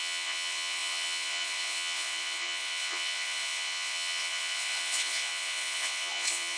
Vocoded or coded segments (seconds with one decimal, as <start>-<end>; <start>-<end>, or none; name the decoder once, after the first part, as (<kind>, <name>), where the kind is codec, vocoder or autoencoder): 0.0-6.6 (vocoder, Vocos)